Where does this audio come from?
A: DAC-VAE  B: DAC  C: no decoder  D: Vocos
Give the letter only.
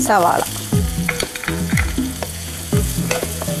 D